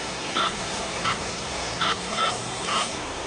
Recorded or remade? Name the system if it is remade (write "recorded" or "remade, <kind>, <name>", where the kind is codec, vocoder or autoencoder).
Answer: remade, codec, SNAC